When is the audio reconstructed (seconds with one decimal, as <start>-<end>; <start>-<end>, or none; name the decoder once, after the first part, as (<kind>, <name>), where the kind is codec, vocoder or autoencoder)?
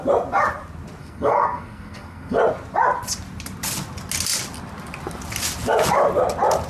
1.0-2.4 (codec, SNAC)